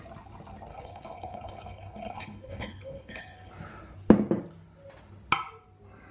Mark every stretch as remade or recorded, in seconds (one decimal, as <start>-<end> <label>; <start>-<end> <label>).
0.0-0.7 recorded; 0.7-3.5 remade; 3.5-6.1 recorded